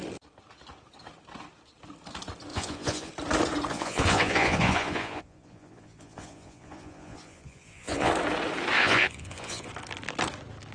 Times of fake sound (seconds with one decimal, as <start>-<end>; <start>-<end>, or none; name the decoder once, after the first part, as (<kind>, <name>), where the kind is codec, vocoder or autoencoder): 2.5-3.1 (vocoder, Vocos); 3.7-8.1; 8.8-9.7